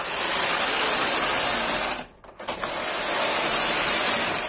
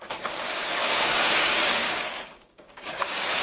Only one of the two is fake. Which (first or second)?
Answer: second